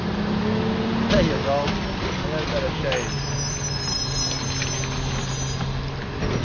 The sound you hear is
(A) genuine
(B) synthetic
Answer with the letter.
A